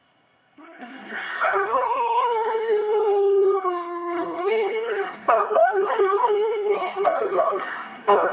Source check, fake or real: fake